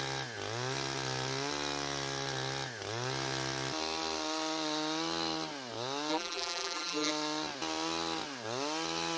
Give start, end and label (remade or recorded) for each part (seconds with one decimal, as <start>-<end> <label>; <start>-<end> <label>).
0.0-6.1 recorded; 6.1-7.1 remade; 7.1-9.2 recorded

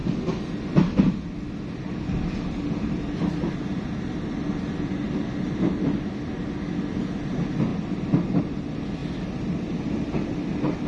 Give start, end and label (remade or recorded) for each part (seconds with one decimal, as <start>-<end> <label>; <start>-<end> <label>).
0.0-10.9 recorded